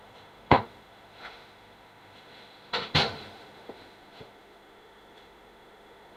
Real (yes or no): no